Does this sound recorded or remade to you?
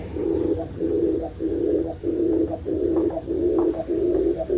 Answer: recorded